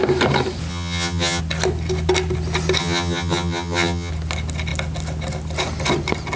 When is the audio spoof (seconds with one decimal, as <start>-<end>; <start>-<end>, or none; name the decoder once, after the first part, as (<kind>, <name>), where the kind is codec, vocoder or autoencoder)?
0.7-1.4 (vocoder, HiFi-GAN); 2.8-4.1